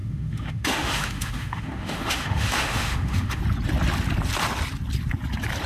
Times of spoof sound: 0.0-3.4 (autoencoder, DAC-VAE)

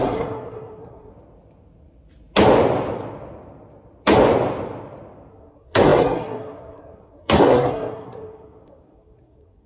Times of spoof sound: 0.0-1.1 (codec, SNAC); 5.3-9.7

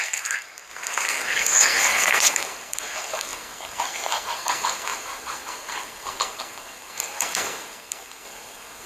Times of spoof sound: 0.0-8.9 (codec, SNAC)

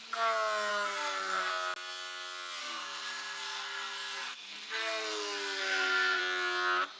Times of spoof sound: 0.7-1.5 (codec, SNAC); 2.6-6.2